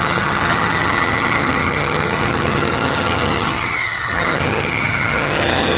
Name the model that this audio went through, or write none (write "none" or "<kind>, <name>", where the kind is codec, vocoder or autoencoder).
vocoder, HiFi-GAN